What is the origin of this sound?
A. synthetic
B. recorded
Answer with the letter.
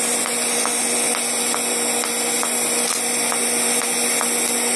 B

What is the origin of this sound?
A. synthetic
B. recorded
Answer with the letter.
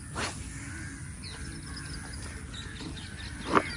B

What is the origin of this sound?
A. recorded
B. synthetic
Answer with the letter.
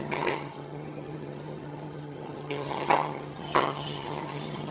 B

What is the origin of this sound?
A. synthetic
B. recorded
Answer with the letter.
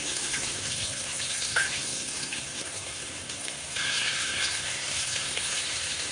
A